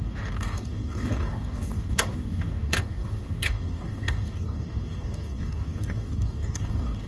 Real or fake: fake